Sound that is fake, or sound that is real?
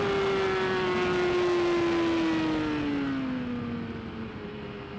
real